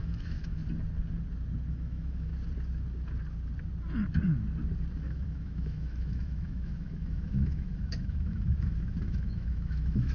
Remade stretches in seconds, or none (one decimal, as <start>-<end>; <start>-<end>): 0.0-0.6; 1.7-2.3; 5.0-10.1